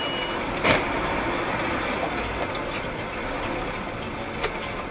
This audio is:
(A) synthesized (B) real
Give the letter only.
B